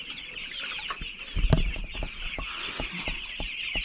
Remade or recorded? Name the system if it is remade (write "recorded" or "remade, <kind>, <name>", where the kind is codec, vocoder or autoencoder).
recorded